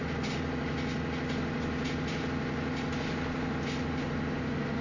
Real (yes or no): yes